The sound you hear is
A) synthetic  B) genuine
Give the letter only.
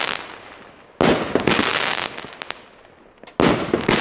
B